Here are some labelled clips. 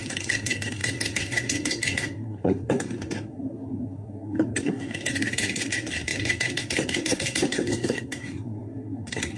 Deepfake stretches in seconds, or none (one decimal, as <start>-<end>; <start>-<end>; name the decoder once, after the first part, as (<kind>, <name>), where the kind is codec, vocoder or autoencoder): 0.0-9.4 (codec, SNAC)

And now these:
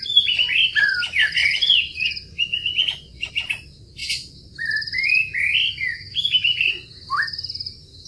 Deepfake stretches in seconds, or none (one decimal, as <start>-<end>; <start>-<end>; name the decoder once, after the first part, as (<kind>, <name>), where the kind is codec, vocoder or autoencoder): 1.4-3.3 (vocoder, Vocos)

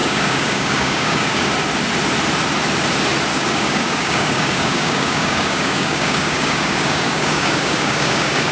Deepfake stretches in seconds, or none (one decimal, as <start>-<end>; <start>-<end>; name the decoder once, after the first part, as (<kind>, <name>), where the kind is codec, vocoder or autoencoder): 0.0-1.5 (codec, DAC); 3.3-8.5

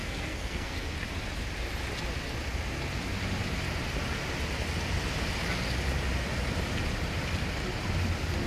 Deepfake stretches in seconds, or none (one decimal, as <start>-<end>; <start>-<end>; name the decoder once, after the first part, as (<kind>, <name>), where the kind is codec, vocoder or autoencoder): 0.0-0.9 (codec, SNAC)